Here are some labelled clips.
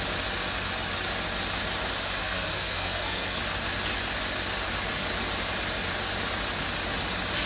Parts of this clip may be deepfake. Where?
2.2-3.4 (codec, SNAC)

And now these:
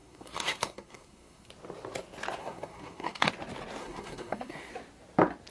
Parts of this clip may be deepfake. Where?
0.0-1.5 (codec, SNAC); 2.4-3.3; 3.8-4.7

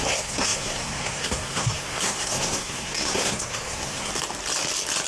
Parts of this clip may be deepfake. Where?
0.0-4.1 (codec, SNAC)

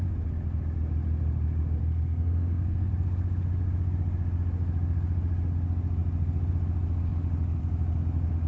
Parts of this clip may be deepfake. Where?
1.8-2.9 (codec, SNAC)

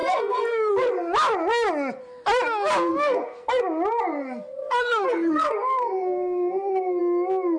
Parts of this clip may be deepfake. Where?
0.0-0.7 (codec, SNAC); 2.9-3.6; 4.6-7.0

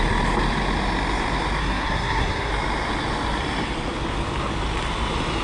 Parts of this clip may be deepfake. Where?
1.6-2.5 (codec, SNAC)

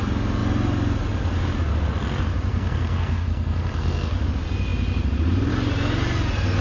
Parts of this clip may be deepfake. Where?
2.5-4.1 (codec, SNAC)

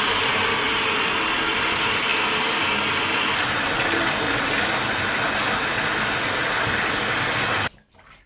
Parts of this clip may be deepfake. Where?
none